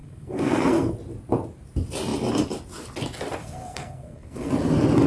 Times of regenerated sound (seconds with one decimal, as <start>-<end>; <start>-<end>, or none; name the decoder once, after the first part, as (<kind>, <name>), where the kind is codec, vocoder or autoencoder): 0.0-0.9 (codec, SNAC); 3.4-4.5